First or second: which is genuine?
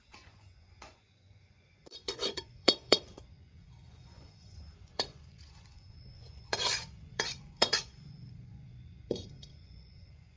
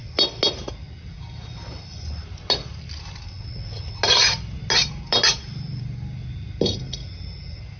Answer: second